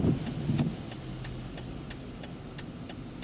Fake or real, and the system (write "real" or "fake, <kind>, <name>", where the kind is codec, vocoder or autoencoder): real